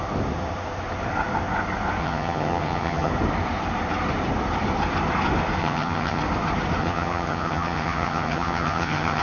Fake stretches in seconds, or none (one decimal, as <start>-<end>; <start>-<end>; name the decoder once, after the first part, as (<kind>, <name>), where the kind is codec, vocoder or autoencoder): 2.0-3.1 (vocoder, HiFi-GAN); 5.6-6.2; 6.8-9.2